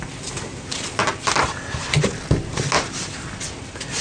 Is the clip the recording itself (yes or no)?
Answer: yes